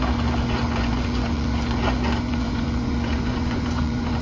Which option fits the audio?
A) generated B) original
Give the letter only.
A